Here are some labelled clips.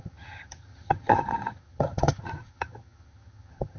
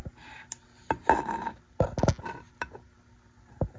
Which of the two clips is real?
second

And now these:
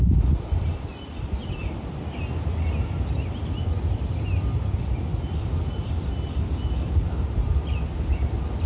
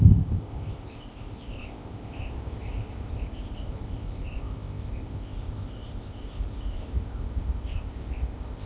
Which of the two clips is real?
first